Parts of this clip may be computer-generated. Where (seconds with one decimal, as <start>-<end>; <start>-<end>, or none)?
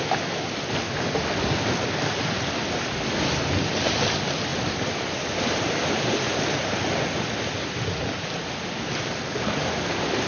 none